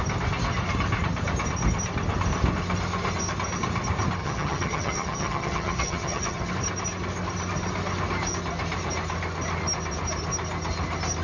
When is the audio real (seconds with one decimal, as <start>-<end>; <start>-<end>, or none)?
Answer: 0.0-4.2; 6.5-11.2